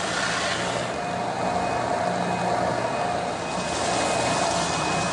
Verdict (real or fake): real